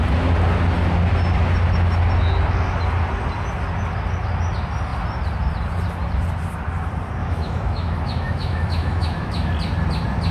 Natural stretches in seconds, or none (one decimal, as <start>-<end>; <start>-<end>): 0.0-7.2; 9.5-10.3